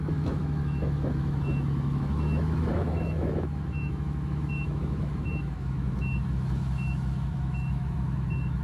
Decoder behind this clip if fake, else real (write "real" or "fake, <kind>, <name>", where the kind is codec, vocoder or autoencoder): fake, autoencoder, DAC-VAE